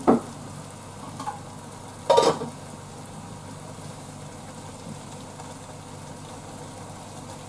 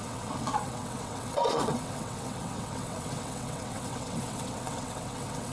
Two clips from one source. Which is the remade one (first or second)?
second